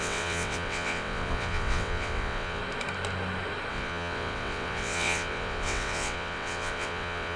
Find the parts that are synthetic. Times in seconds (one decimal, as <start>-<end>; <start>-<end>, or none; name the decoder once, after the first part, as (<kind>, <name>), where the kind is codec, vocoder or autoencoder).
0.0-2.6 (vocoder, WaveNeXt); 3.7-7.4